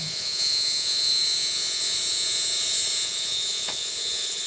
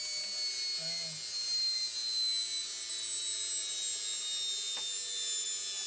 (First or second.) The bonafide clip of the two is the second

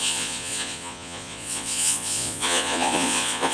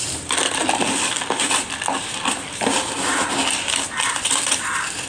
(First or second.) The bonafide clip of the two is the second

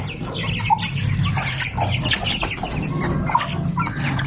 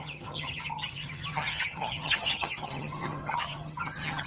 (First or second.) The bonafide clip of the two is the first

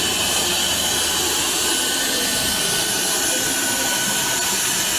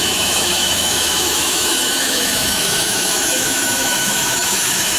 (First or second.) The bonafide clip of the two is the first